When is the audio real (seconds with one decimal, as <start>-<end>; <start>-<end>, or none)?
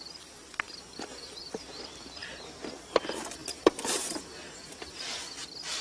0.0-2.2; 3.0-3.4; 4.9-5.8